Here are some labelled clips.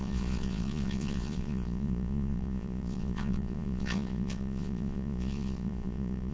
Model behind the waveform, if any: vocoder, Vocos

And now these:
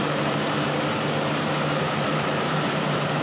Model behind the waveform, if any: vocoder, BigVGAN v2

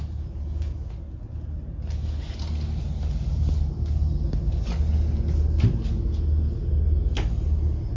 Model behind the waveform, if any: none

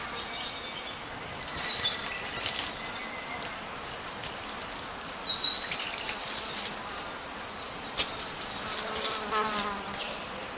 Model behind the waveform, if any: none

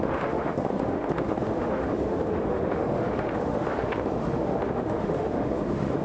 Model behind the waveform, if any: autoencoder, DAC-VAE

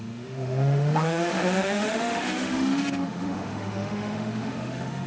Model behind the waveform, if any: autoencoder, DAC-VAE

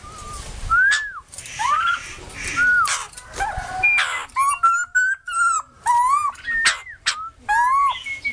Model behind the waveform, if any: none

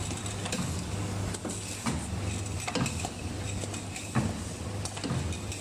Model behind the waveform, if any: none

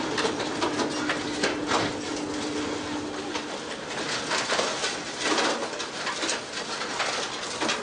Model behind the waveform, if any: none